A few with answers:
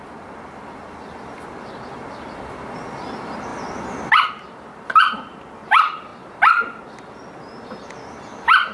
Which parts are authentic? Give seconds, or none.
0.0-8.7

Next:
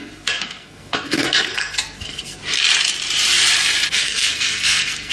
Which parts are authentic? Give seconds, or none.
2.4-3.9

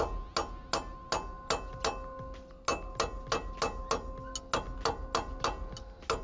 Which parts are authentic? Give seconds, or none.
0.0-6.2

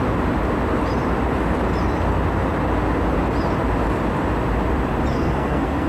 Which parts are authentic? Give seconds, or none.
0.0-5.1

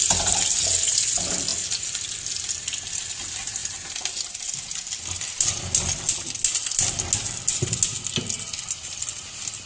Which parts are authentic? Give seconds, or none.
0.0-9.7

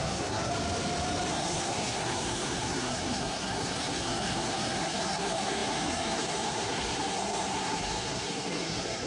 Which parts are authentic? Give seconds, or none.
0.5-1.3